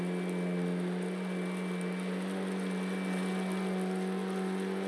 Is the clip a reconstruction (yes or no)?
no